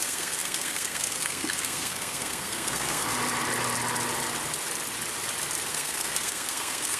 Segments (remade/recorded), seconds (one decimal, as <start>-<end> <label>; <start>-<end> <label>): 0.0-3.1 remade; 3.1-5.7 recorded; 5.7-7.0 remade